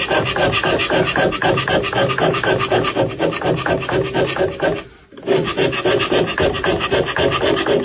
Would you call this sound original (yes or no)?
yes